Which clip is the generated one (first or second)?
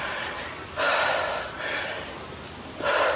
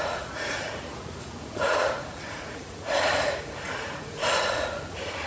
second